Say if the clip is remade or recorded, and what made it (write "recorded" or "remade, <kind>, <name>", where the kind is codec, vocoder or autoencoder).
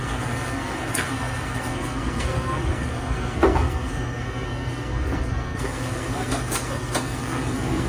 remade, codec, SNAC